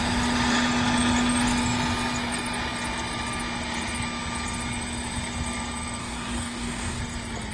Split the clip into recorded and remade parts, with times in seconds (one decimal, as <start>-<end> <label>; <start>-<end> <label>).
0.0-6.0 recorded; 6.0-7.0 remade; 7.0-7.5 recorded